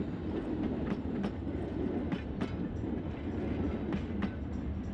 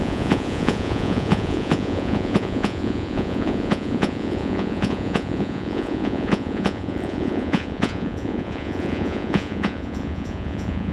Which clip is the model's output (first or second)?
second